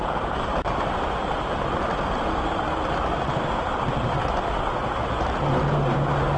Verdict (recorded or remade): recorded